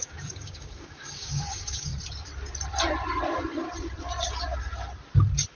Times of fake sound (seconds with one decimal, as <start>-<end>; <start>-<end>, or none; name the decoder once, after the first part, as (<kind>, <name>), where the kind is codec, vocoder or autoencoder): 0.0-1.9 (codec, DAC)